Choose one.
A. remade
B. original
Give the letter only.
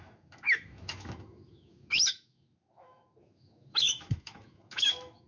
A